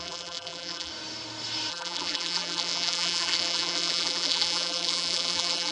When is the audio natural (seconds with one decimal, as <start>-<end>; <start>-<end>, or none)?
0.9-1.7